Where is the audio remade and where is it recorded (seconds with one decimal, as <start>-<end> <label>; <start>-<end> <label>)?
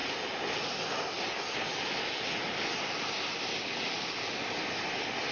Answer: 0.0-5.3 recorded